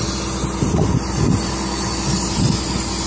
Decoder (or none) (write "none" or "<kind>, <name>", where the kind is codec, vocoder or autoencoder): none